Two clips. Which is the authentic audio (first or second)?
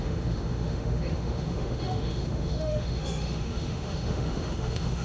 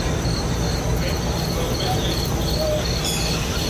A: second